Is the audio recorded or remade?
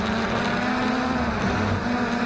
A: recorded